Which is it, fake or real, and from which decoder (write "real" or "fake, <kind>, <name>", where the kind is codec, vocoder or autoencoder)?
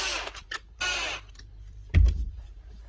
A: fake, vocoder, BigVGAN v2